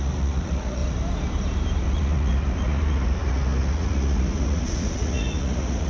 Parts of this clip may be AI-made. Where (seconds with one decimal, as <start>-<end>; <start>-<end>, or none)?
0.0-0.8; 1.9-5.9